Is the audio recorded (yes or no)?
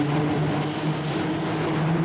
yes